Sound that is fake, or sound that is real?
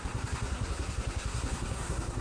fake